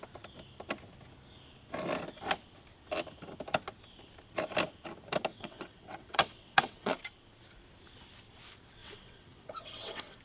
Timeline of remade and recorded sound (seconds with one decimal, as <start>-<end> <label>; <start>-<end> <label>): 0.0-5.3 recorded; 5.3-7.0 remade; 7.0-8.8 recorded; 8.8-10.2 remade